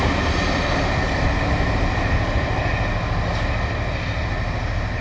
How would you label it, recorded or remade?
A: recorded